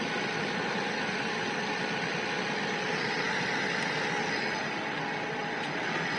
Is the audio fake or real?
real